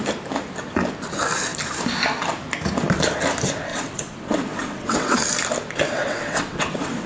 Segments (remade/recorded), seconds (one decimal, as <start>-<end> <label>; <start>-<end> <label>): 0.0-3.7 recorded; 3.7-5.2 remade; 5.2-6.0 recorded; 6.0-7.1 remade